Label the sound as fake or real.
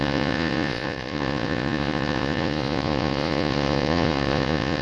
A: fake